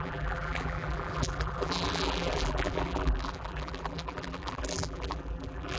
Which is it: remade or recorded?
remade